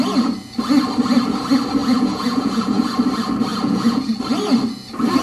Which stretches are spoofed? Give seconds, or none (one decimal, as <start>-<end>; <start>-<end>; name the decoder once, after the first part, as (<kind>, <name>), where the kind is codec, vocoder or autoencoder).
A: 1.8-2.9 (vocoder, Vocos); 3.5-4.1